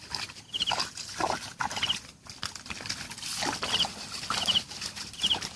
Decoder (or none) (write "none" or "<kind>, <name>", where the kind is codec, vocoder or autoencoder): vocoder, BigVGAN v2